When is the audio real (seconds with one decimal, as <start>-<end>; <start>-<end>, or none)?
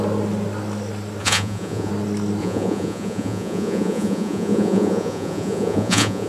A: 0.0-1.2; 1.9-2.4